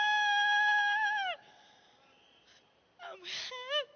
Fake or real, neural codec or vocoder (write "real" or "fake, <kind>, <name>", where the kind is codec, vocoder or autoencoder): real